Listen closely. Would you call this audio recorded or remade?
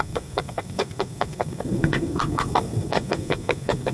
remade